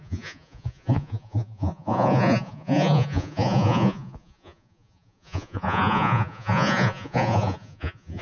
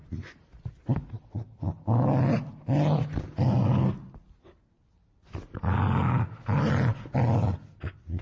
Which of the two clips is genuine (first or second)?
second